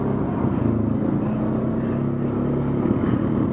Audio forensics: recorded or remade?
recorded